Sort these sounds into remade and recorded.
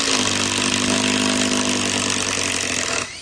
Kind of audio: recorded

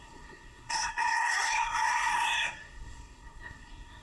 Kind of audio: remade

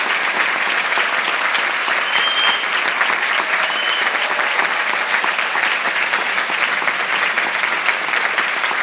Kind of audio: recorded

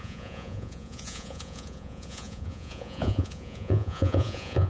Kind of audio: remade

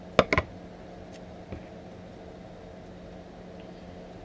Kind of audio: recorded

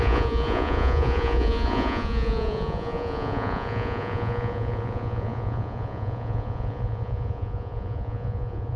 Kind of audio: remade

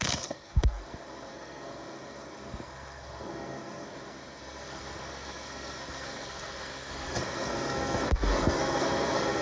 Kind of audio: remade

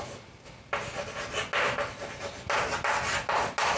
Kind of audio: recorded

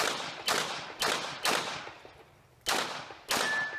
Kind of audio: recorded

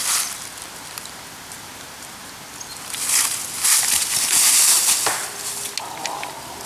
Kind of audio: recorded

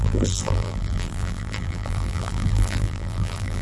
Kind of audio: remade